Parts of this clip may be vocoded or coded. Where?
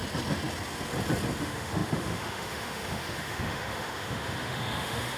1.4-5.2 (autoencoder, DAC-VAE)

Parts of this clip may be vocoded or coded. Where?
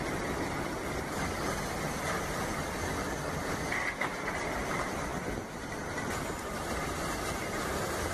none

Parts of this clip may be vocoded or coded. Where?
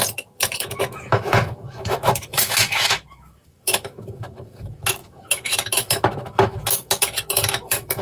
0.0-8.0 (autoencoder, DAC-VAE)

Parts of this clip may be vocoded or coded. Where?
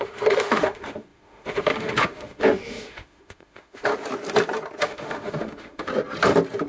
0.0-3.9 (autoencoder, DAC-VAE); 4.8-5.9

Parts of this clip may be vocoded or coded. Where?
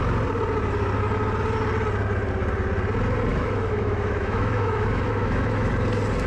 3.3-5.7 (autoencoder, DAC-VAE)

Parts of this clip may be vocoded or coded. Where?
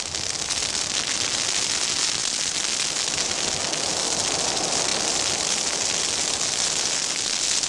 none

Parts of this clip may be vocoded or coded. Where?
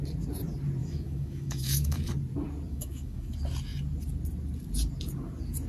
0.8-2.1 (autoencoder, DAC-VAE); 2.7-3.3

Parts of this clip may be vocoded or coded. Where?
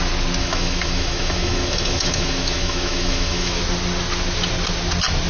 0.4-3.6 (autoencoder, DAC-VAE)